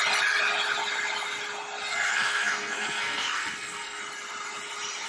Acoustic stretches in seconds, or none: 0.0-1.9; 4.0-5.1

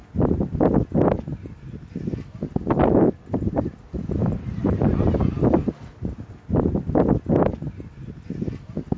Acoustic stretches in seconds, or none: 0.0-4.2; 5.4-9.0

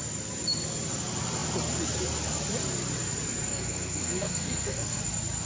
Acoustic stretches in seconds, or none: 0.0-3.5; 5.0-5.5

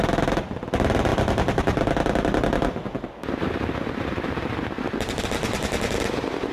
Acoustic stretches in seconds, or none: 0.0-6.5